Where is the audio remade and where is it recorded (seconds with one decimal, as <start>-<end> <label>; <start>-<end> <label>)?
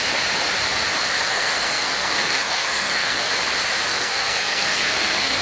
0.0-1.2 recorded; 1.2-3.3 remade; 3.3-3.9 recorded; 3.9-5.4 remade